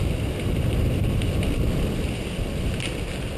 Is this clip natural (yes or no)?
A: yes